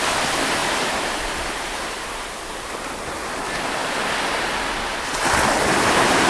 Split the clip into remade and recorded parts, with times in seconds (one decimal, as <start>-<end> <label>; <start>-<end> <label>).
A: 0.0-0.6 recorded; 0.6-2.3 remade; 2.3-3.8 recorded; 3.8-4.4 remade; 4.4-6.3 recorded